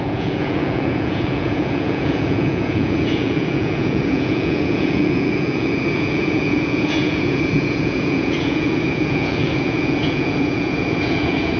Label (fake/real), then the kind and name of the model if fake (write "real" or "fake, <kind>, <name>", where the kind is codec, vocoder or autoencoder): fake, vocoder, Vocos